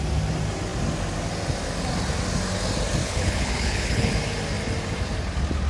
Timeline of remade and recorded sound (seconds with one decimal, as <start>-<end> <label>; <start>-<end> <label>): 0.0-3.0 recorded; 3.0-4.1 remade; 4.1-5.7 recorded

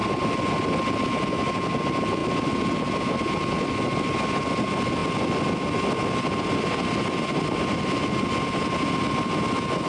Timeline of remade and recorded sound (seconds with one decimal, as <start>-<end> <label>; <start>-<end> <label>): 0.0-9.9 recorded

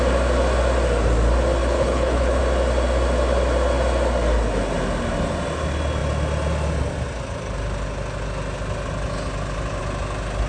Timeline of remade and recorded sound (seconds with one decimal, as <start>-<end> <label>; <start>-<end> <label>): 0.0-1.6 recorded; 1.6-2.4 remade; 2.4-10.5 recorded